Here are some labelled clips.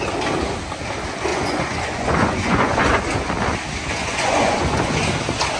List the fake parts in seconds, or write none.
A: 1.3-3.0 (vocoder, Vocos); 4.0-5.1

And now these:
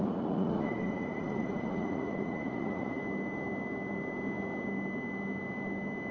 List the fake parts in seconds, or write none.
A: 0.0-3.0 (vocoder, Vocos)